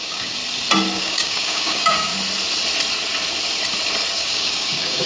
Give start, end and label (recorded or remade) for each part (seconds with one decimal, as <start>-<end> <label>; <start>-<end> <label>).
0.0-0.4 remade; 0.4-1.0 recorded; 1.0-2.1 remade; 2.1-4.2 recorded; 4.2-5.1 remade